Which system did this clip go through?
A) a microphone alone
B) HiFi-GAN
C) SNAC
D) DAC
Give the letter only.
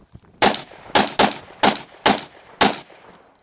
A